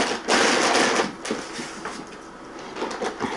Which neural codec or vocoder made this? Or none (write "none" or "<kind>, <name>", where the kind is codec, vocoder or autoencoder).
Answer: none